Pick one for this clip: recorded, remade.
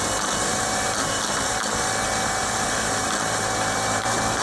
remade